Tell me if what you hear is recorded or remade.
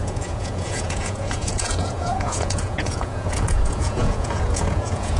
remade